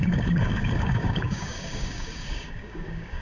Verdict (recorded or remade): remade